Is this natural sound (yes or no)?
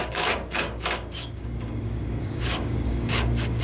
no